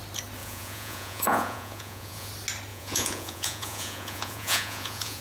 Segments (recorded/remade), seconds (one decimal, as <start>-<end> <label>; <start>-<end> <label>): 0.0-0.4 recorded; 0.4-2.3 remade; 2.3-2.7 recorded; 2.7-5.2 remade